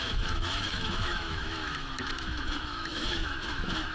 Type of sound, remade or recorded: remade